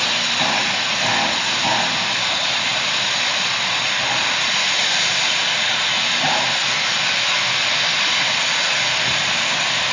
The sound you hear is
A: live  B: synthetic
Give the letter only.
A